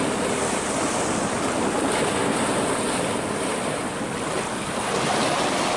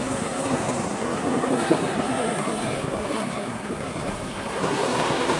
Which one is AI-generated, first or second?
second